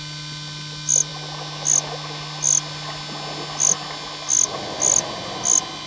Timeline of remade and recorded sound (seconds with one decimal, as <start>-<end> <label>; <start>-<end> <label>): 0.0-5.9 recorded